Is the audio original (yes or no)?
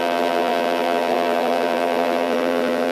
no